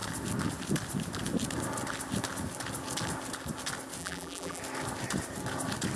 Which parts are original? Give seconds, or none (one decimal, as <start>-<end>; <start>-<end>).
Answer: 0.0-4.0; 4.6-6.0

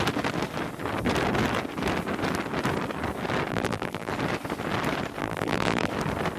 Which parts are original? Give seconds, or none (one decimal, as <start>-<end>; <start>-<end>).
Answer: 0.0-3.5; 4.1-5.2; 5.9-6.4

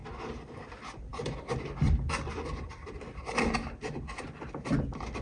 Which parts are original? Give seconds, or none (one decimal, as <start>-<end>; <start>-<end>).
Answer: 0.5-1.1; 4.2-5.2

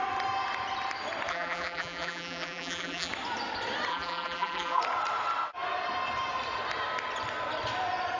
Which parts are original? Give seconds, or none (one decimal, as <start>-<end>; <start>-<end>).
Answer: 0.0-1.3; 3.1-3.9; 4.8-8.2

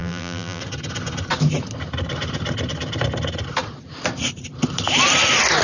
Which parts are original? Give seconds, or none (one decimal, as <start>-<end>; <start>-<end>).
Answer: 0.6-5.6

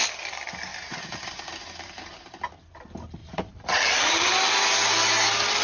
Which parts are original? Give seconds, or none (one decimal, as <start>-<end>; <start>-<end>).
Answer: 0.0-0.7; 1.4-3.2; 4.3-5.6

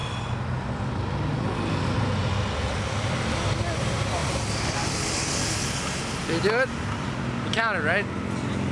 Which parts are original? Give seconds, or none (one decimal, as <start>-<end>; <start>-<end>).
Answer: 0.0-8.7